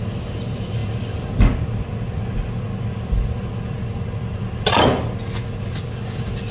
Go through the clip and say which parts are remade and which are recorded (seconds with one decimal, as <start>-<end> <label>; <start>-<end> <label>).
0.0-6.5 recorded